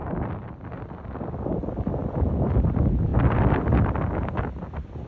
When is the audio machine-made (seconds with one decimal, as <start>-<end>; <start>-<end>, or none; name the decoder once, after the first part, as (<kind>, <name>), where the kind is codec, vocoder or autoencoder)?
none